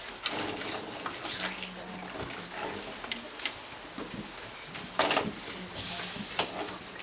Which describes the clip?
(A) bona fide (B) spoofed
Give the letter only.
A